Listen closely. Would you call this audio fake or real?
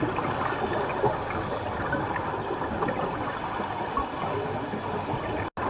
real